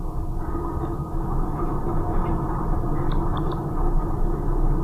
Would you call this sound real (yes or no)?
yes